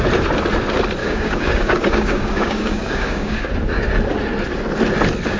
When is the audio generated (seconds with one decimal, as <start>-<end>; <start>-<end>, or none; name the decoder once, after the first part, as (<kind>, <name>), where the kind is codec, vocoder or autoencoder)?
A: 1.0-3.5 (codec, DAC)